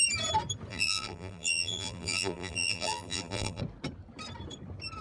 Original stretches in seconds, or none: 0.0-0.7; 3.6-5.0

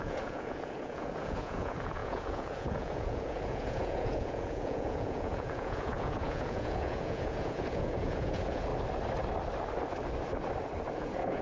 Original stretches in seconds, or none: 8.7-11.0

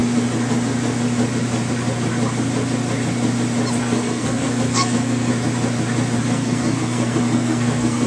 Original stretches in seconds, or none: 0.0-3.8; 5.3-6.2

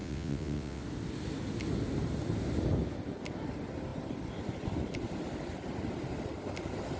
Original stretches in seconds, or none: 0.8-7.0

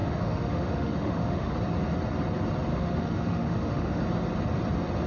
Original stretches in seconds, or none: 1.5-2.7; 4.0-5.1

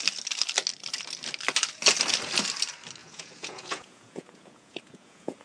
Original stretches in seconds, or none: 0.0-3.0

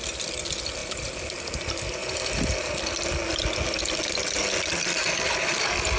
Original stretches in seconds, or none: 0.0-6.0